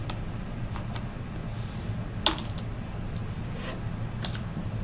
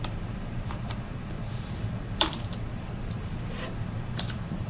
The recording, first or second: first